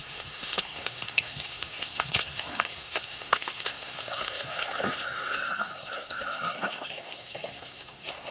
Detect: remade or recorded remade